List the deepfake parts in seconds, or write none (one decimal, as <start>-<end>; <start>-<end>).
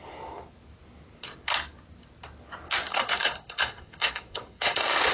2.9-5.1